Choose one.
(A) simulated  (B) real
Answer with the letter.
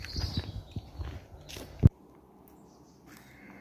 B